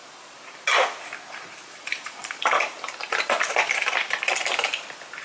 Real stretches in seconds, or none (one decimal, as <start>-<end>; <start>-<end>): 0.0-1.8